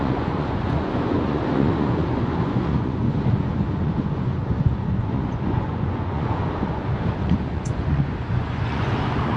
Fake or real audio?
fake